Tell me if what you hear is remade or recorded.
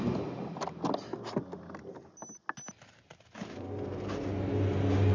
recorded